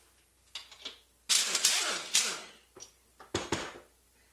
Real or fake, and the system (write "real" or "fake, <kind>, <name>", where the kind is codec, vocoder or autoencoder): real